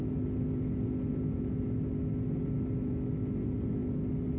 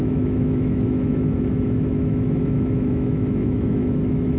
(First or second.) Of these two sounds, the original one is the first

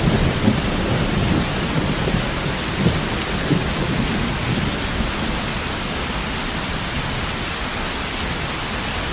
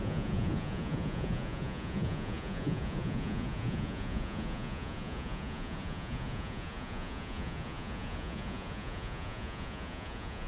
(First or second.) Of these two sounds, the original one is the first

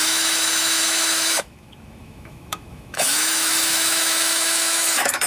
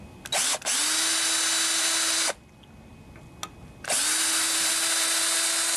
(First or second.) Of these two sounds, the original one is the second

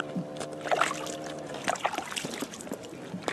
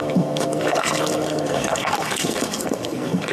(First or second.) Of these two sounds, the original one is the first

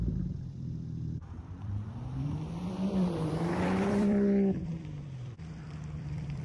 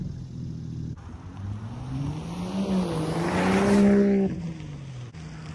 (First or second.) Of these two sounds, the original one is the second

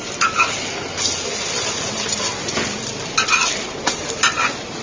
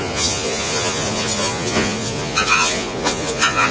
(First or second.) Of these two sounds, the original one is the first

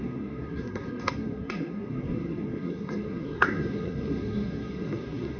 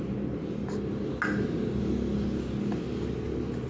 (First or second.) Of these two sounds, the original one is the second